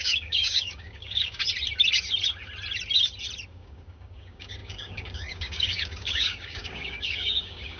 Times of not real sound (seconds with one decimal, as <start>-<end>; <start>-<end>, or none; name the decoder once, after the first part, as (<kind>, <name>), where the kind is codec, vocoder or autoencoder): 0.0-1.4 (codec, DAC); 3.5-7.8